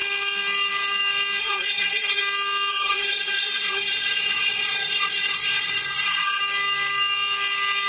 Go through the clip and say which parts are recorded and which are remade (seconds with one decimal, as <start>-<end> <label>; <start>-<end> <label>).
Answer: 0.0-1.4 recorded; 1.4-2.2 remade; 2.2-2.7 recorded; 2.7-6.4 remade; 6.4-7.9 recorded